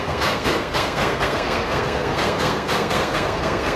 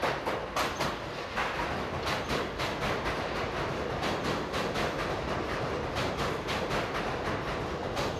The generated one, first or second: first